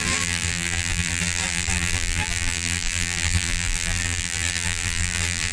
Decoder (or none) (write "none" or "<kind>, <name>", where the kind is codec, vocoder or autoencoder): vocoder, BigVGAN v2